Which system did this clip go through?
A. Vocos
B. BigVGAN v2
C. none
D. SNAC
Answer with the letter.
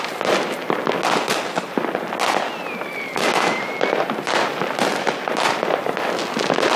C